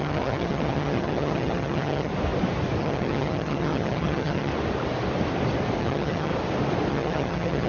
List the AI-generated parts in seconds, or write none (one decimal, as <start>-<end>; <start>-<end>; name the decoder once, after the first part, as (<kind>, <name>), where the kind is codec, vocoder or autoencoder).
0.0-2.1 (vocoder, HiFi-GAN); 2.8-4.5; 5.8-6.3; 6.9-7.7